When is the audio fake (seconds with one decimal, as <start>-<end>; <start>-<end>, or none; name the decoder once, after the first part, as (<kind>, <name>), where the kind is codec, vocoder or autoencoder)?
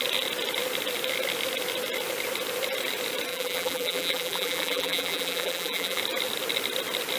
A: 3.3-6.0 (vocoder, BigVGAN v2)